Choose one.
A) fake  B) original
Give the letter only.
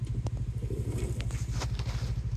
B